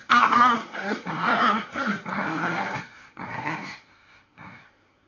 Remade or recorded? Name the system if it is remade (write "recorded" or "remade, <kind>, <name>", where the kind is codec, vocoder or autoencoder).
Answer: remade, codec, SNAC